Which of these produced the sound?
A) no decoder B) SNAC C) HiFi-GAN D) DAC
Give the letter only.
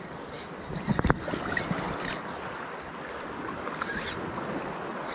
A